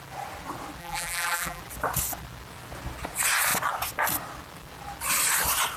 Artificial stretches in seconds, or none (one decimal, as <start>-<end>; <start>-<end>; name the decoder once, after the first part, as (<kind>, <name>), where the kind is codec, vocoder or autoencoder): 0.8-1.6 (vocoder, BigVGAN v2)